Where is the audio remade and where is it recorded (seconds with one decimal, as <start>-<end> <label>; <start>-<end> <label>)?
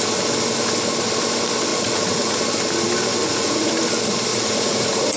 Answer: 0.0-1.7 recorded; 1.7-2.4 remade; 2.4-3.2 recorded; 3.2-3.7 remade; 3.7-4.3 recorded; 4.3-5.2 remade